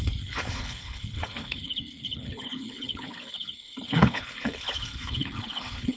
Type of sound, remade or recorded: remade